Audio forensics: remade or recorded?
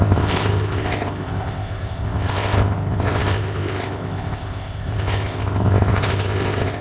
remade